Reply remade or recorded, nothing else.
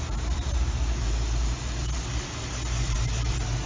recorded